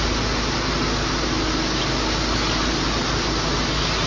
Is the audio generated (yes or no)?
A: no